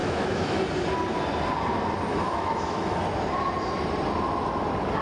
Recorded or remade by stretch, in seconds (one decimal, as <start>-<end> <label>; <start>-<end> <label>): 0.0-0.6 remade; 0.6-2.1 recorded; 2.1-3.0 remade; 3.0-5.0 recorded